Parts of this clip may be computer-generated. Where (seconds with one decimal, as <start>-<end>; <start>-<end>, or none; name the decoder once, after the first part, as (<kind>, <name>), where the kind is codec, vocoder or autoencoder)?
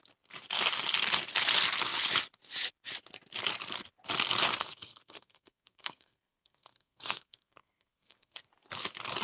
4.5-8.5 (codec, SNAC)